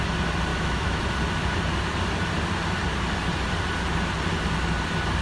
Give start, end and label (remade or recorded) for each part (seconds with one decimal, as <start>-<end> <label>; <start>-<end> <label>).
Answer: 0.0-0.5 recorded; 0.5-1.0 remade; 1.0-5.2 recorded